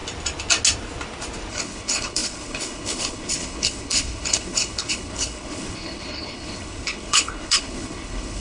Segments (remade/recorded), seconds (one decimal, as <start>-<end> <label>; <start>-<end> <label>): 0.0-1.5 recorded; 1.5-8.4 remade